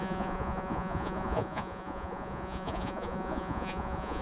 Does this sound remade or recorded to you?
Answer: remade